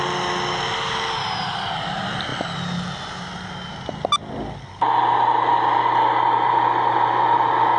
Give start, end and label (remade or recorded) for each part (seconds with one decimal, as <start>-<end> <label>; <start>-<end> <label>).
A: 0.0-7.8 recorded